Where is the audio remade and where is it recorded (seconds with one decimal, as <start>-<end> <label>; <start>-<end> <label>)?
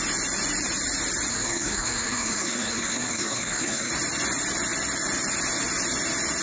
0.0-1.3 recorded; 1.3-3.9 remade; 3.9-6.4 recorded